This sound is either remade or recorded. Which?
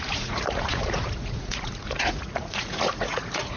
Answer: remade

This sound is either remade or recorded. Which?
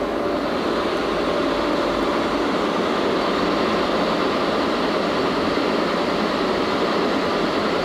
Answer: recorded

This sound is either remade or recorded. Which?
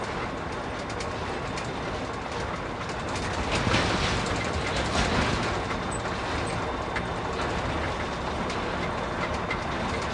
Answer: recorded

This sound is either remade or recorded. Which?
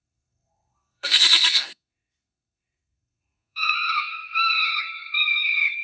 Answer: remade